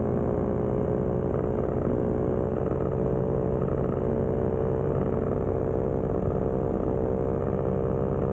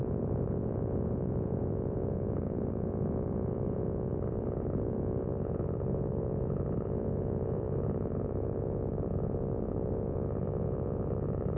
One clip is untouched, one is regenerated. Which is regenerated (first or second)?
second